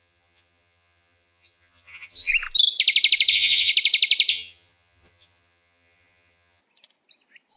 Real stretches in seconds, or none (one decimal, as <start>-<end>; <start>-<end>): 2.3-3.3; 3.7-4.3; 6.6-7.6